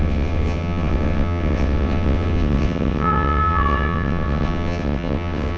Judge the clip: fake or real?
fake